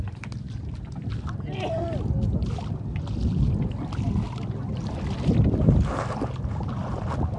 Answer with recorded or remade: recorded